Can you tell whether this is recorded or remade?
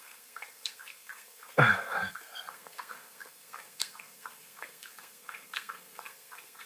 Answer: remade